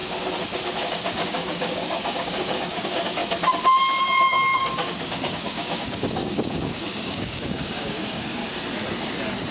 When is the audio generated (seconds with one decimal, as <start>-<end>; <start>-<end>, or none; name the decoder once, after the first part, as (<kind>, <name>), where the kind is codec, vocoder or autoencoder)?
0.9-3.2 (codec, DAC); 4.0-8.4